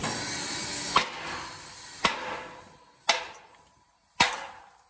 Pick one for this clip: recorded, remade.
recorded